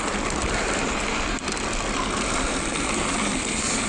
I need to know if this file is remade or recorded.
recorded